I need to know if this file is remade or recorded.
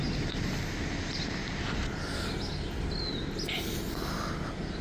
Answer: recorded